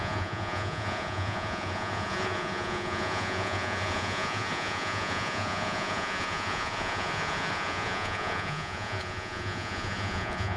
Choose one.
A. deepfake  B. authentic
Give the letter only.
A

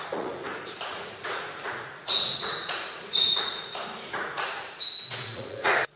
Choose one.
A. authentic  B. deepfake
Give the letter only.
B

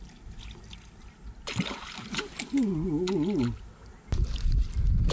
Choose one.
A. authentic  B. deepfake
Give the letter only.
A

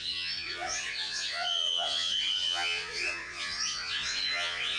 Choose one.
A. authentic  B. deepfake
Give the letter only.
B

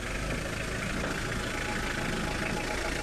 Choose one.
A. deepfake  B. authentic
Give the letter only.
B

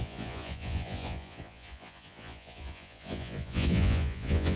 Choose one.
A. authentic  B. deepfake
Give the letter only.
B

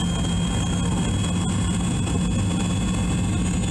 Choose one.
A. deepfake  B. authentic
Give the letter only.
B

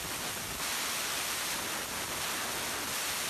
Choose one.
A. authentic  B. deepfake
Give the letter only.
A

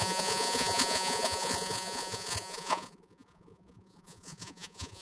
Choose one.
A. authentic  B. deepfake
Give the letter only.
B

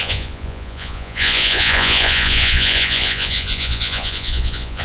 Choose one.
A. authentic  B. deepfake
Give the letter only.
B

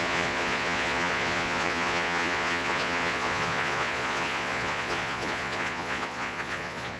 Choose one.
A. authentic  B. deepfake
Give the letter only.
B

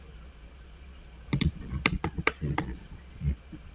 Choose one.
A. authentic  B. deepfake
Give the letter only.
B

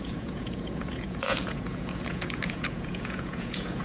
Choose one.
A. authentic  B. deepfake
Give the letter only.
B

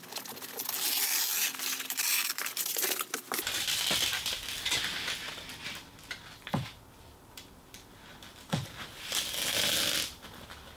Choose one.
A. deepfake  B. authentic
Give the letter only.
B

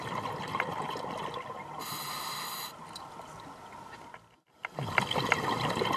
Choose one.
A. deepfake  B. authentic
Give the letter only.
B